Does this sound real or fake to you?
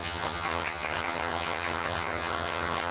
fake